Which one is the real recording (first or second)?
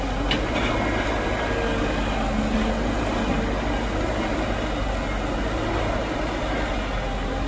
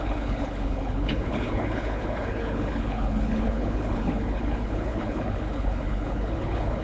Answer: first